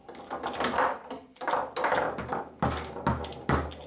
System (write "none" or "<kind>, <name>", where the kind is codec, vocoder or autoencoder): none